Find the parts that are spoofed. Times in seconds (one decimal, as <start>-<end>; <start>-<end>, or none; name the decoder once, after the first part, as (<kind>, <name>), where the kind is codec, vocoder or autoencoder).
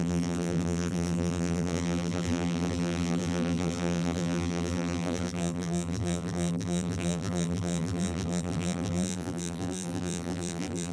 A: 0.0-10.9 (vocoder, BigVGAN v2)